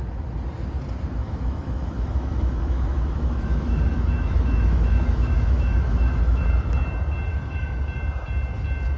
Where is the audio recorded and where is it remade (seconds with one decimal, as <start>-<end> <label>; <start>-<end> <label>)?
0.0-1.2 recorded; 1.2-6.5 remade; 6.5-7.3 recorded; 7.3-7.8 remade; 7.8-9.0 recorded